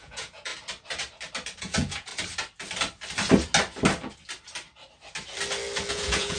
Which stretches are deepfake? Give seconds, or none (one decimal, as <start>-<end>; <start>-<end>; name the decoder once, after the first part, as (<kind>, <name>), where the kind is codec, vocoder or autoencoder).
0.0-0.5 (vocoder, Vocos); 1.6-2.1; 5.9-6.4